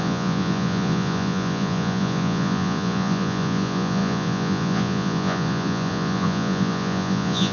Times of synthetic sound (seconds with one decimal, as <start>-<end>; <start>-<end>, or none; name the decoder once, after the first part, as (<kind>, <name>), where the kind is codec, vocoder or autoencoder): 0.0-7.5 (vocoder, Vocos)